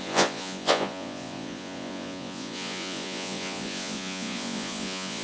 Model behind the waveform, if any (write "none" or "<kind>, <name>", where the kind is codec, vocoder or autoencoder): vocoder, Vocos